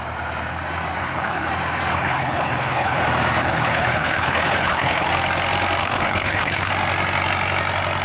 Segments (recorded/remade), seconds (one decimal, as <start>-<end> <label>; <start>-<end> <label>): 0.0-1.0 recorded; 1.0-1.5 remade; 1.5-1.9 recorded; 1.9-3.0 remade; 3.0-3.4 recorded; 3.4-5.1 remade; 5.1-5.8 recorded; 5.8-6.7 remade; 6.7-8.0 recorded